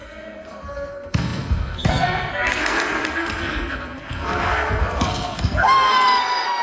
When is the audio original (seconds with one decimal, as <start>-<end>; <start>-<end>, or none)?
none

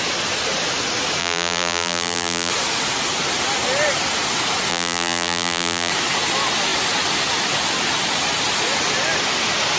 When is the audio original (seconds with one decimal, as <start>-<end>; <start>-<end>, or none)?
0.0-1.2; 2.5-4.7; 5.9-9.8